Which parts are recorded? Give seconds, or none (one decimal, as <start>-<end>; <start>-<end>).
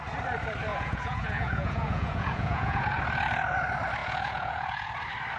0.0-0.7; 3.0-4.0; 4.9-5.4